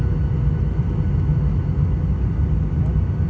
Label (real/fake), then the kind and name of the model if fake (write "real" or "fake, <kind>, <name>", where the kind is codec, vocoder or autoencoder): real